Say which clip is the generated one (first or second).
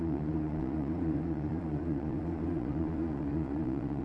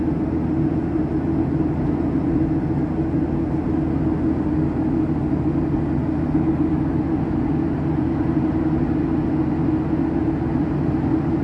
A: first